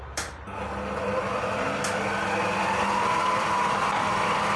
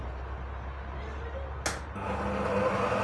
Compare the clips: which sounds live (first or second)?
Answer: second